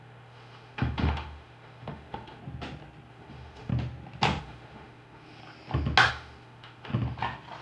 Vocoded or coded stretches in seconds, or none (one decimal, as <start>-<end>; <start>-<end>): 0.0-2.4; 3.1-3.7; 4.4-5.4; 6.1-6.9